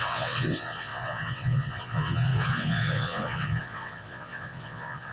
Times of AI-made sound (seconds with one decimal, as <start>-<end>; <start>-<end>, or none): 0.0-5.1